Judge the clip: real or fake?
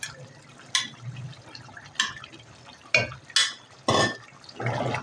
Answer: real